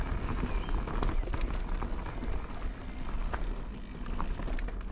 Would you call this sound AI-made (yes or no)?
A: no